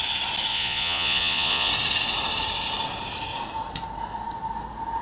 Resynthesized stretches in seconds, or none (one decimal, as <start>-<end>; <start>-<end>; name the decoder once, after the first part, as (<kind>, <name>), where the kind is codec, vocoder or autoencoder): 0.5-1.7 (vocoder, Vocos)